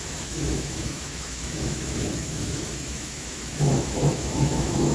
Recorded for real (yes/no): no